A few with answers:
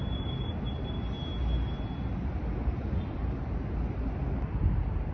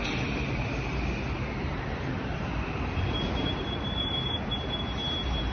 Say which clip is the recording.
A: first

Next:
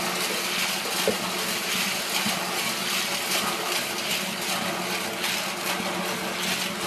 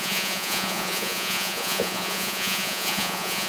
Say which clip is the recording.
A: first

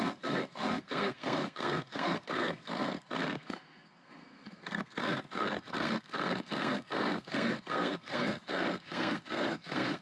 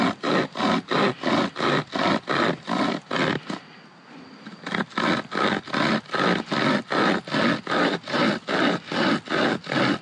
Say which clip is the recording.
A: second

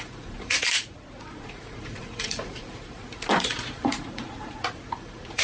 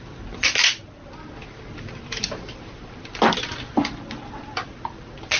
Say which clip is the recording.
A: second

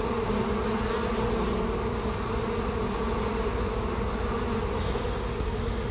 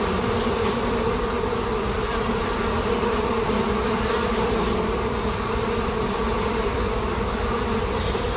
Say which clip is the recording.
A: first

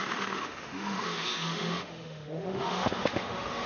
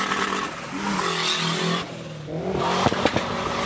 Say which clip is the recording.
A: second